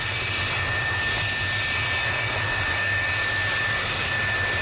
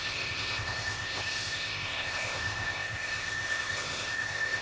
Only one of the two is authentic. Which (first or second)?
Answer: first